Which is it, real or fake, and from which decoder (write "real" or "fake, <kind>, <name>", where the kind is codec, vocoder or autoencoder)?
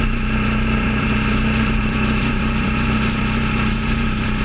fake, vocoder, BigVGAN v2